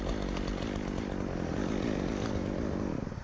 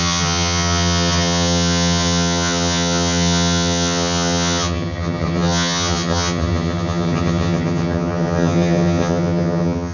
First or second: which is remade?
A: second